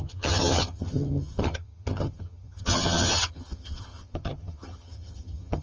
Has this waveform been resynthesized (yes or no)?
yes